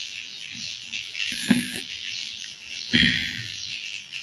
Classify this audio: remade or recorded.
remade